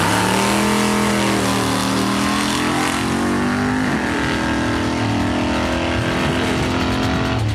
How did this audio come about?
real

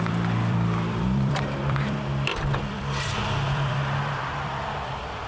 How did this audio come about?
fake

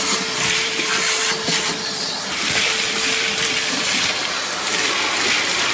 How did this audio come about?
fake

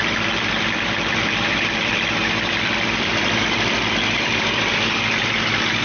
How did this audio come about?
fake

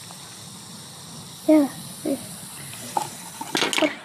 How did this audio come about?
real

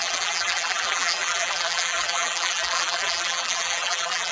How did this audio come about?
fake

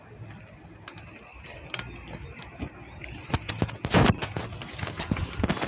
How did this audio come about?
real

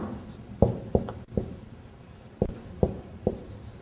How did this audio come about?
real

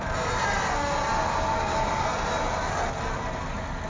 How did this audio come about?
real